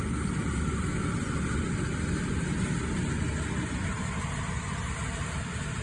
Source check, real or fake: real